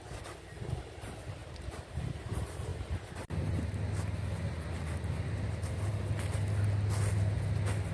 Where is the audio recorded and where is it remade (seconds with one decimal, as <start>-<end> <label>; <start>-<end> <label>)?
0.0-1.4 recorded; 1.4-2.0 remade; 2.0-7.9 recorded